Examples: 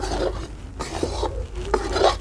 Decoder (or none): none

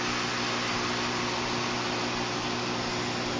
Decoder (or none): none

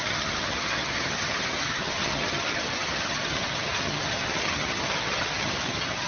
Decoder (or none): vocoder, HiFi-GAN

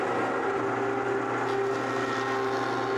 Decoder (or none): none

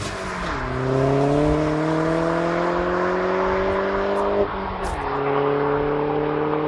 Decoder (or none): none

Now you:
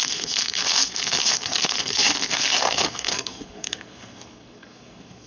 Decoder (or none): codec, SNAC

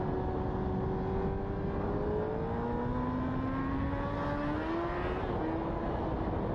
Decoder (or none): none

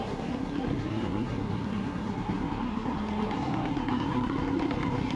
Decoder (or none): codec, SNAC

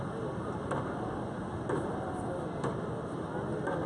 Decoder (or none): none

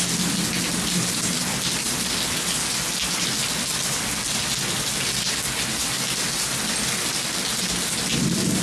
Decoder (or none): none